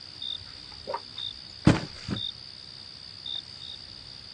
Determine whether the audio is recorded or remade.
recorded